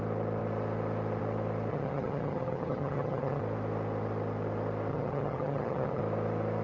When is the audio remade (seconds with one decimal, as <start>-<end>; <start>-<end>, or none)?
1.7-3.4; 4.9-6.0